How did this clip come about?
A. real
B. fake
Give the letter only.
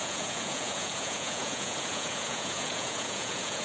B